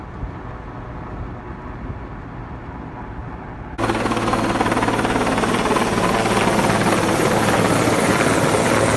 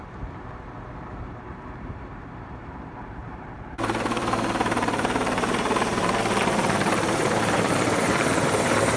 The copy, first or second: second